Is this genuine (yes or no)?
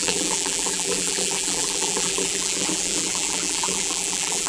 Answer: no